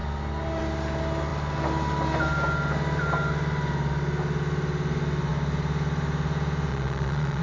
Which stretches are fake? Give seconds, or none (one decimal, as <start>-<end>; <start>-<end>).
6.7-7.4